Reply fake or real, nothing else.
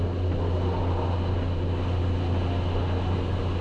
real